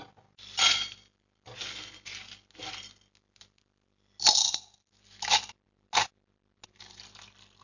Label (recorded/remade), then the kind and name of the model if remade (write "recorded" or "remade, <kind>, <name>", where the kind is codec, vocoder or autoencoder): recorded